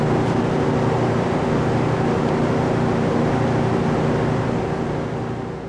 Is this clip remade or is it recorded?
recorded